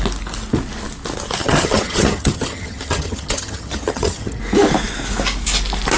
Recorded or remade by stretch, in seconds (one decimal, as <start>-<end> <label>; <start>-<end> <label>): 0.0-1.4 recorded; 1.4-4.4 remade; 4.4-6.0 recorded